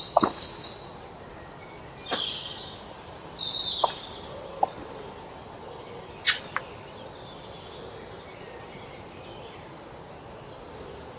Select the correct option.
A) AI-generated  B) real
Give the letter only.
B